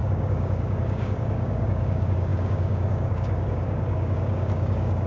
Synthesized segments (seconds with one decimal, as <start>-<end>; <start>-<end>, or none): 0.0-5.1